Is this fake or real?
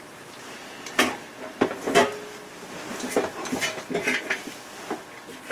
real